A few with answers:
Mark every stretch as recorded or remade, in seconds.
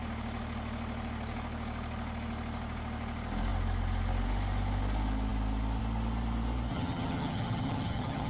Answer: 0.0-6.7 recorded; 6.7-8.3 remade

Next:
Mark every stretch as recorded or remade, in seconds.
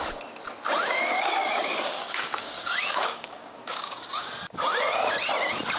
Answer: 0.0-0.8 recorded; 0.8-4.3 remade; 4.3-5.8 recorded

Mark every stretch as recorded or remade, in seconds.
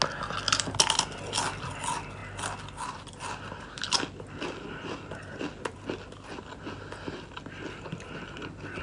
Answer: 0.0-8.8 recorded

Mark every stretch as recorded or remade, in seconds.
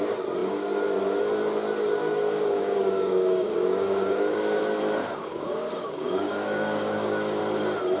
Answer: 0.0-2.0 recorded; 2.0-4.6 remade; 4.6-5.0 recorded; 5.0-7.4 remade; 7.4-8.0 recorded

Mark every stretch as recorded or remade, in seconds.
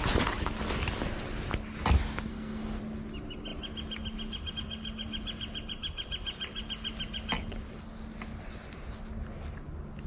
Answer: 0.0-2.3 recorded; 2.3-2.8 remade; 2.8-10.1 recorded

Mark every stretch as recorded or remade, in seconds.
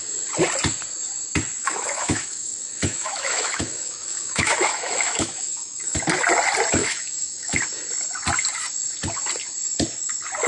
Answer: 0.0-1.6 recorded; 1.6-6.0 remade; 6.0-6.8 recorded; 6.8-7.6 remade; 7.6-10.5 recorded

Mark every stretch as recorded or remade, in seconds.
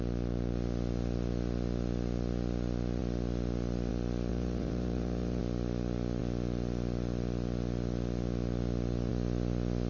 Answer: 0.0-4.3 recorded; 4.3-5.4 remade; 5.4-9.9 recorded